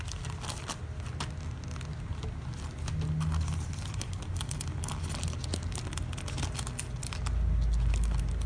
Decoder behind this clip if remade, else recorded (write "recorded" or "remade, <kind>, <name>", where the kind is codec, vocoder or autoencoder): recorded